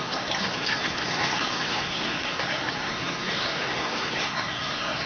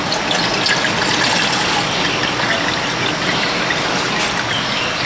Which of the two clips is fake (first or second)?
first